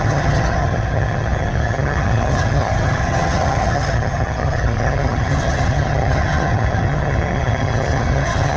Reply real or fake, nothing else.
fake